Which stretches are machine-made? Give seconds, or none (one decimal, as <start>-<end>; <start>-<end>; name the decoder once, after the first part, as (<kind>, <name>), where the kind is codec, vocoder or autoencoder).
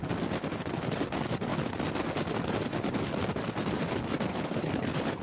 4.3-5.2 (codec, HILCodec)